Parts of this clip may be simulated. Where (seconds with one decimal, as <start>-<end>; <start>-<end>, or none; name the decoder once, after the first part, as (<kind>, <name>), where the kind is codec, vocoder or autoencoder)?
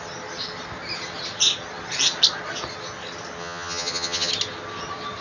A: 3.4-4.3 (vocoder, HiFi-GAN)